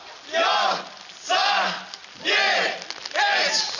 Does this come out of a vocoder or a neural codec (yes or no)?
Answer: no